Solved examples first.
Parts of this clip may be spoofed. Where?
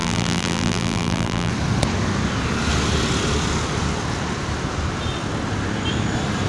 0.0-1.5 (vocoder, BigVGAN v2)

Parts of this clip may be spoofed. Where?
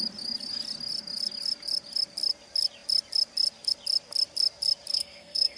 4.9-5.6 (codec, SNAC)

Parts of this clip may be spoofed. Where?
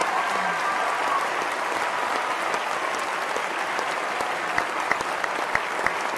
none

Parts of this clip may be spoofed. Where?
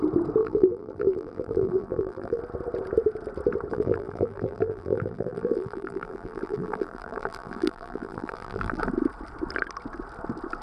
0.4-2.4 (vocoder, BigVGAN v2); 3.7-8.8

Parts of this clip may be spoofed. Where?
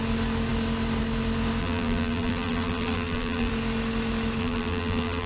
1.6-3.5 (vocoder, BigVGAN v2); 4.4-5.3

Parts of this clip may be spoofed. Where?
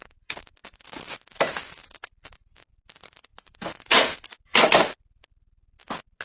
none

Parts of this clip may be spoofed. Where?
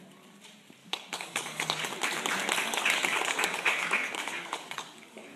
0.8-1.9 (codec, DAC); 2.6-5.4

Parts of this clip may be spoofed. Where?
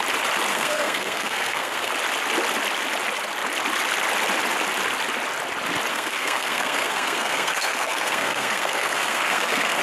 0.5-1.9 (codec, SNAC); 5.9-9.8